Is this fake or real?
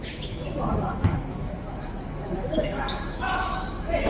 fake